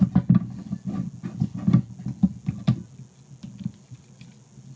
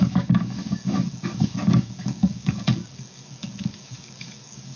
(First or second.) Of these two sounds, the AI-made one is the second